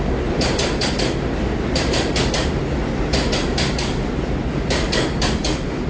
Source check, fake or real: real